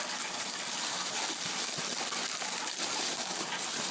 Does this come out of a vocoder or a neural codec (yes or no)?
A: no